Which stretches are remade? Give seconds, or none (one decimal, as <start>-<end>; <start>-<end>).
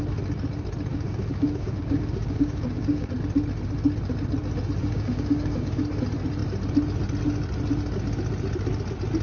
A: 0.9-3.1; 4.8-5.8